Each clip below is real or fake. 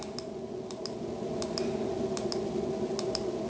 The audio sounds real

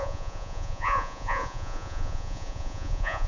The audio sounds fake